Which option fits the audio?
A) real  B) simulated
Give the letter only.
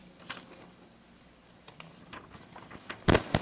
A